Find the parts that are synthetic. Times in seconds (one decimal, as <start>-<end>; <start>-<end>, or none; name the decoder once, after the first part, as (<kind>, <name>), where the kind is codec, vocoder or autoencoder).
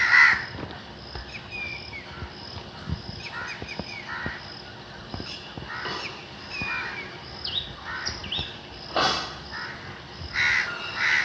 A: none